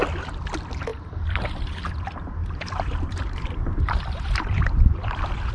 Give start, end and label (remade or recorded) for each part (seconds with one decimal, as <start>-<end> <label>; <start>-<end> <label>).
0.0-0.9 recorded; 0.9-1.8 remade; 1.8-2.4 recorded; 2.4-5.5 remade

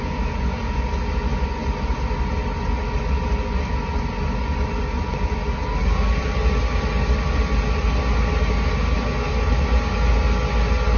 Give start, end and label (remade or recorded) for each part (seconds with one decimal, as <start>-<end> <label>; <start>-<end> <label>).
0.0-11.0 recorded